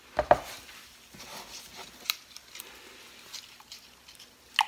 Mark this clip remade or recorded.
recorded